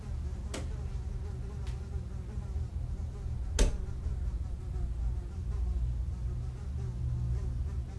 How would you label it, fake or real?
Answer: real